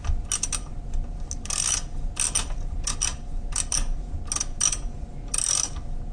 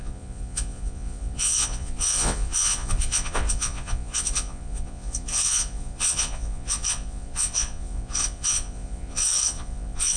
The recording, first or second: first